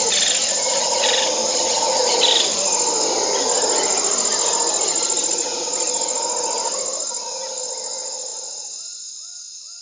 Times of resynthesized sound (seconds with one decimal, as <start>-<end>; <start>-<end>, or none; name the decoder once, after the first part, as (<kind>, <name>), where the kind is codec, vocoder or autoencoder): none